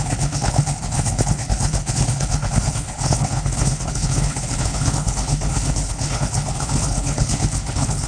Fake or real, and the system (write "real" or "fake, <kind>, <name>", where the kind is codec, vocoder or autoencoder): fake, codec, HILCodec